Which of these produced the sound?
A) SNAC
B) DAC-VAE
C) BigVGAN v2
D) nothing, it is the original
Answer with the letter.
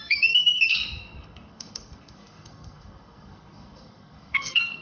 A